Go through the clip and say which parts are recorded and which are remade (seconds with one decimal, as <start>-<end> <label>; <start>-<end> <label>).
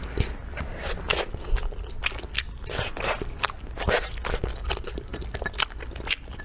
0.0-6.4 recorded